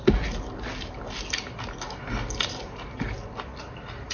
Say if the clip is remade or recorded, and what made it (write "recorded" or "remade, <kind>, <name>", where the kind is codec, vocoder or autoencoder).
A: recorded